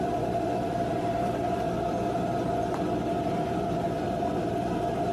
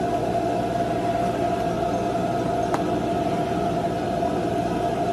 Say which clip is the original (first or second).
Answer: second